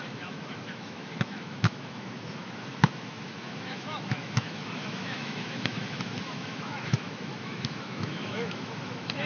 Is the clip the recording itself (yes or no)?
no